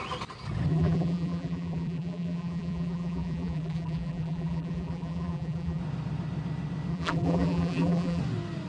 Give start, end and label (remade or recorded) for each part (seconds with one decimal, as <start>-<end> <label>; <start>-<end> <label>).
0.0-0.7 recorded; 0.7-5.8 remade; 5.8-6.9 recorded; 6.9-8.2 remade; 8.2-8.7 recorded